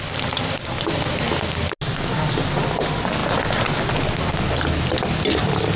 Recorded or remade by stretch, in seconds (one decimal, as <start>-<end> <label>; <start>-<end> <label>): 0.0-5.8 recorded